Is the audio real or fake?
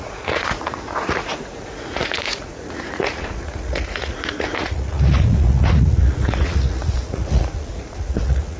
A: fake